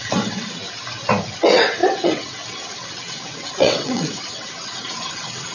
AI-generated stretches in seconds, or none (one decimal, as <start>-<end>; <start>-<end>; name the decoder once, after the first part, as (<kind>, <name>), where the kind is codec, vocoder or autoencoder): 0.0-0.6 (vocoder, WaveNeXt); 1.4-5.5